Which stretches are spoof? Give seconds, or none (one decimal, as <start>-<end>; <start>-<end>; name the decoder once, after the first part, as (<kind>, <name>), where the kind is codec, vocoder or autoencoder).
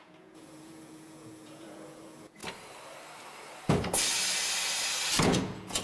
0.0-2.4 (vocoder, Vocos); 5.2-5.8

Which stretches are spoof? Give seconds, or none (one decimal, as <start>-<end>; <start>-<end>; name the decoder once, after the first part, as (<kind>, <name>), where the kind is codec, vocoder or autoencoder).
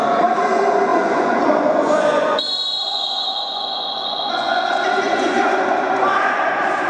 0.0-6.9 (vocoder, Vocos)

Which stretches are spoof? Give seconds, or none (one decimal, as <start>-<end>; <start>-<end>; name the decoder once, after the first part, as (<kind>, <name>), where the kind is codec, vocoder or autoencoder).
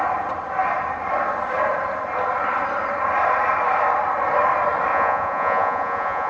4.9-6.3 (vocoder, Vocos)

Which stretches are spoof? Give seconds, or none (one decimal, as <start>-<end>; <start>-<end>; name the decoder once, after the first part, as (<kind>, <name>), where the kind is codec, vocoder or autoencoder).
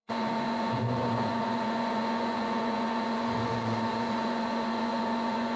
0.0-5.6 (vocoder, Vocos)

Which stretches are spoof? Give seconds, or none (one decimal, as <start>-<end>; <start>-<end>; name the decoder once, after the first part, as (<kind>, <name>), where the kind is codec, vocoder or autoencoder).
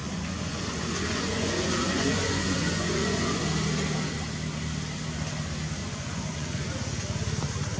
0.0-3.4 (vocoder, Vocos); 5.8-6.7